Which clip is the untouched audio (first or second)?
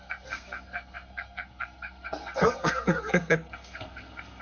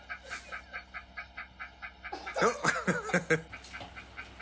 second